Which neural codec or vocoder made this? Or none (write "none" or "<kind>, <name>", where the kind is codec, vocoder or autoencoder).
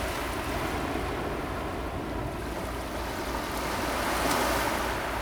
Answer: none